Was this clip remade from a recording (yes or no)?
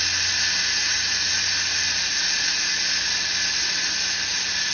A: no